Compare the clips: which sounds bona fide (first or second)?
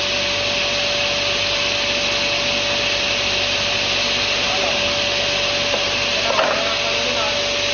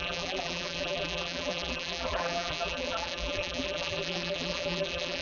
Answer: first